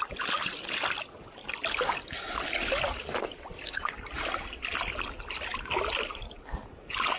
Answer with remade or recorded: recorded